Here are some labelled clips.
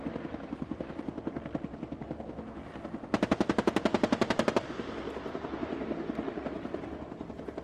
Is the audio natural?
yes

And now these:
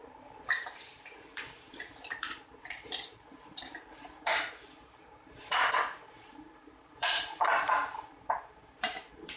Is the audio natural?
no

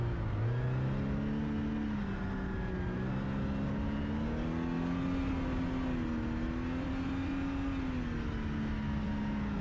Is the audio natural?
yes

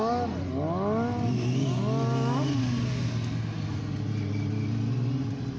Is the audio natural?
yes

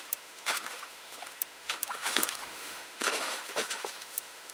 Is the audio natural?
no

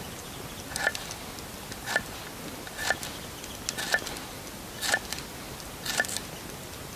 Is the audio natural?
yes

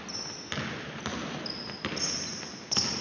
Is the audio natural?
yes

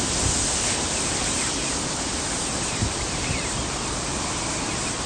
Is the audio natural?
yes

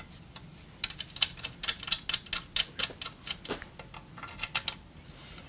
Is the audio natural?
yes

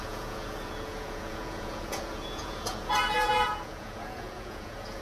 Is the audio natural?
no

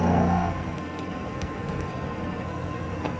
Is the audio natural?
no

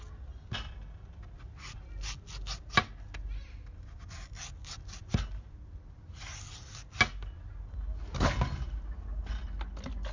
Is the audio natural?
yes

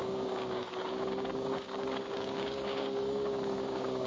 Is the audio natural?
no